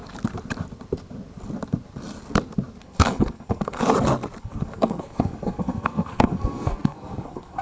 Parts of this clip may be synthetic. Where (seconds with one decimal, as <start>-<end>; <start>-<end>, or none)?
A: 2.8-3.8; 4.4-7.6